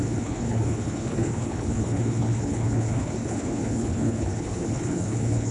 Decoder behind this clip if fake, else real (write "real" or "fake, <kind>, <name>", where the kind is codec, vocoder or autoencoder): fake, codec, HILCodec